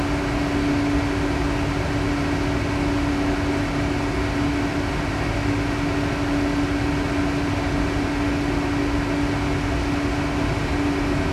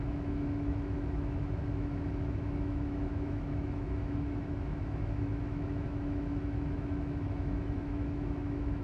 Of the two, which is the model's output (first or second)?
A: second